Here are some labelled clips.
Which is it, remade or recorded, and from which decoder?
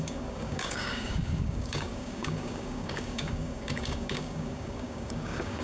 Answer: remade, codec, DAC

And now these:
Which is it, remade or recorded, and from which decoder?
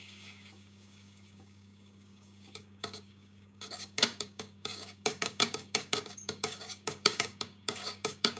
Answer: remade, codec, DAC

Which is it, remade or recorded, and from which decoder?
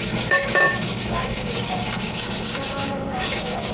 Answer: remade, codec, DAC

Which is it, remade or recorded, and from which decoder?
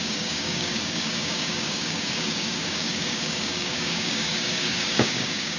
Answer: remade, codec, DAC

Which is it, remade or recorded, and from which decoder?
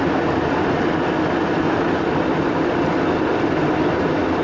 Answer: recorded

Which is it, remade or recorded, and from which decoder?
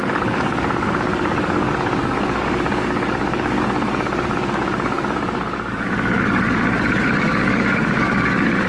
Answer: remade, codec, DAC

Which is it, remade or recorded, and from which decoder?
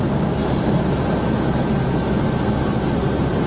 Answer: recorded